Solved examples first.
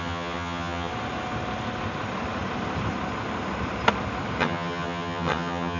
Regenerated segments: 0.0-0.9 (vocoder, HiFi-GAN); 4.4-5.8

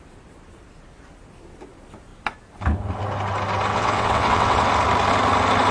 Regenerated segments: 3.7-4.7 (vocoder, WaveNeXt)